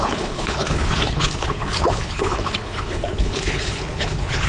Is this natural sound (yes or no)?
no